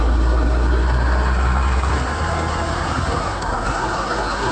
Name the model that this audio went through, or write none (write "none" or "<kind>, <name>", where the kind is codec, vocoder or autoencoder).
codec, SNAC